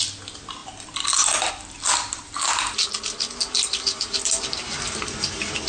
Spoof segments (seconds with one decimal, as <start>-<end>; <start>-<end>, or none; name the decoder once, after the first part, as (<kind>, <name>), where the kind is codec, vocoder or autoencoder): none